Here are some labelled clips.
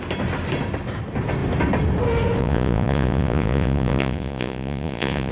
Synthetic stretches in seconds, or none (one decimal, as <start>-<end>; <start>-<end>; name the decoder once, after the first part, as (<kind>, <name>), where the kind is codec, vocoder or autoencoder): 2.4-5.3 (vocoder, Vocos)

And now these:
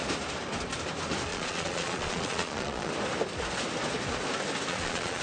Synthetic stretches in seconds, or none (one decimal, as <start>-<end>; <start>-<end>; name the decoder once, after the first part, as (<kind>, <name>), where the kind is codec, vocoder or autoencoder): 1.3-2.9 (vocoder, Vocos); 4.7-5.2

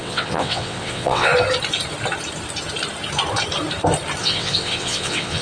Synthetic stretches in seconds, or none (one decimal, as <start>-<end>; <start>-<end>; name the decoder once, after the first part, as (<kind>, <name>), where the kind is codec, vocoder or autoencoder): 0.0-1.3 (vocoder, WaveNeXt); 4.2-5.4

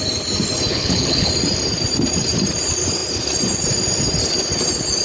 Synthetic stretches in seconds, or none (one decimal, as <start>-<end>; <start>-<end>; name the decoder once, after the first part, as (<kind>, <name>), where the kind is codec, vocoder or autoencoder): 0.7-1.3 (codec, HILCodec)

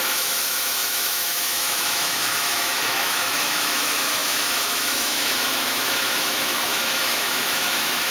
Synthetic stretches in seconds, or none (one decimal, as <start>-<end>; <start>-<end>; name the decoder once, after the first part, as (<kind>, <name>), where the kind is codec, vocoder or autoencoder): 0.0-8.1 (autoencoder, DAC-VAE)